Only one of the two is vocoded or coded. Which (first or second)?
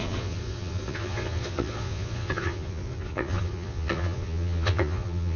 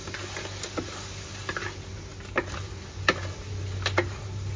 first